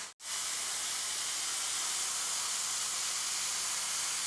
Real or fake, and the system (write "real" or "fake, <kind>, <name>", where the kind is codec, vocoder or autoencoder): real